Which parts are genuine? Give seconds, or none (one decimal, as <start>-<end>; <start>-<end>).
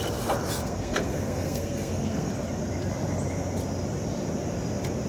0.0-0.6; 2.3-5.1